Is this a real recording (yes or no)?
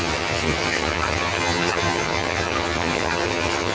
no